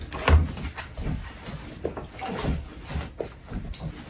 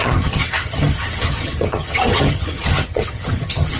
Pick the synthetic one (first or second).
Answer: second